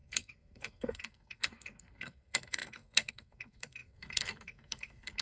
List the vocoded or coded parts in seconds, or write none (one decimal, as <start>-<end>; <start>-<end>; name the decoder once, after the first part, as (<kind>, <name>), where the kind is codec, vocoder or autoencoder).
0.0-5.2 (codec, SNAC)